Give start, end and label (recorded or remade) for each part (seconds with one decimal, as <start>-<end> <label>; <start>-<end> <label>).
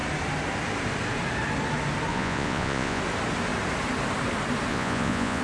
0.0-2.1 recorded; 2.1-3.0 remade; 3.0-4.7 recorded; 4.7-5.4 remade